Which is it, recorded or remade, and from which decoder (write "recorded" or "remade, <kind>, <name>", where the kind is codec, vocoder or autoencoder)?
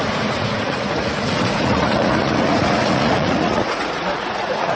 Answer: remade, vocoder, Vocos